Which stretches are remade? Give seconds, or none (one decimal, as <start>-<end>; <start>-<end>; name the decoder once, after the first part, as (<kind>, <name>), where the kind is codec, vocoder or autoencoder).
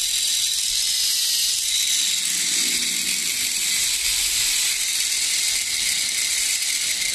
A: none